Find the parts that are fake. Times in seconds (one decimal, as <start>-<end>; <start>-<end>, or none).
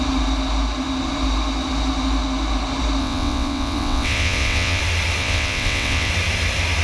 3.0-4.8; 5.2-6.1